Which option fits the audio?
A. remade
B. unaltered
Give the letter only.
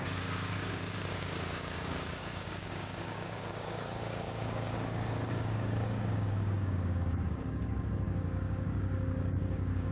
A